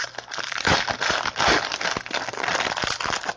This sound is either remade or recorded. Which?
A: recorded